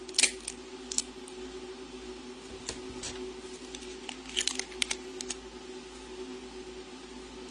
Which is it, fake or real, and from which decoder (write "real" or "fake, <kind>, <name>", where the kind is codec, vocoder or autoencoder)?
real